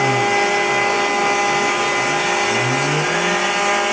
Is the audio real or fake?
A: real